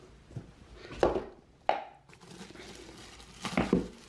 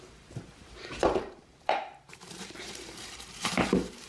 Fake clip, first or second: second